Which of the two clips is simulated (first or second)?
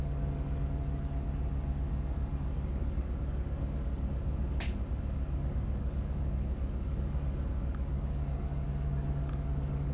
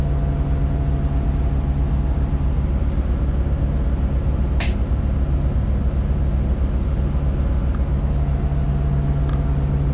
first